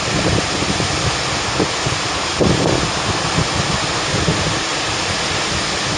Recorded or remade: recorded